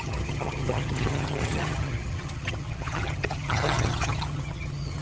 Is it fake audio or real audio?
fake